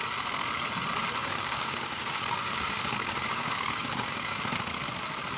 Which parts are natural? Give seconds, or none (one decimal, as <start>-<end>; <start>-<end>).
0.0-1.2; 4.4-5.4